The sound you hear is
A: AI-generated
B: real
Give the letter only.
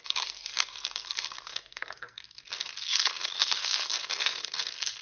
A